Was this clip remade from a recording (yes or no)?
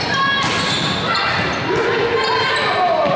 no